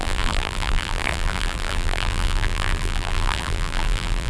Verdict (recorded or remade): remade